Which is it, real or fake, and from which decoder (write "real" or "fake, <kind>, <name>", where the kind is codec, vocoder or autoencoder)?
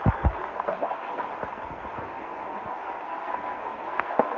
fake, codec, SNAC